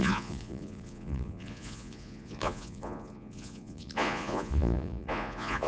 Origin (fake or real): fake